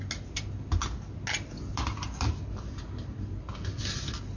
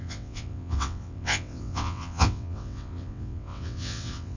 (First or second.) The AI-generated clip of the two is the second